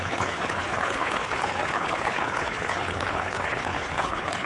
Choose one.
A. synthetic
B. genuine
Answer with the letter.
A